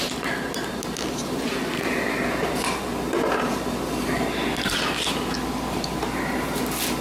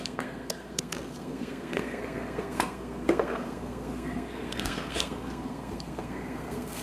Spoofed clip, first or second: second